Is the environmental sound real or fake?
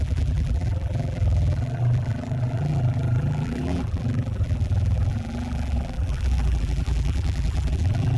fake